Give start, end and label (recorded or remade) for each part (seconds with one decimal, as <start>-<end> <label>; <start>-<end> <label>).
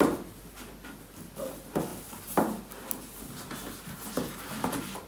0.0-5.1 recorded